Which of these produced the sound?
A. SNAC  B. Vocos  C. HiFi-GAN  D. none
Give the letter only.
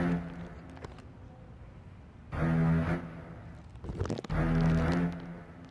D